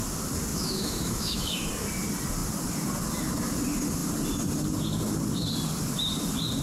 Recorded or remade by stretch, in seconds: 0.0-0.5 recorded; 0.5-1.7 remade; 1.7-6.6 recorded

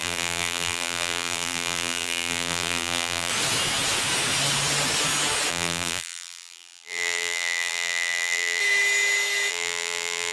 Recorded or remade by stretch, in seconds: 0.0-3.3 remade; 3.3-5.5 recorded; 5.5-8.6 remade; 8.6-9.5 recorded; 9.5-10.3 remade